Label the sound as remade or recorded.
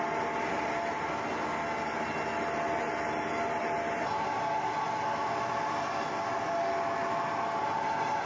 recorded